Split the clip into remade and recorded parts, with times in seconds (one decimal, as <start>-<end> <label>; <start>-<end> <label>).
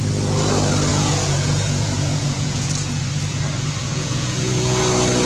0.0-0.9 recorded; 0.9-3.0 remade; 3.0-3.9 recorded; 3.9-4.8 remade; 4.8-5.3 recorded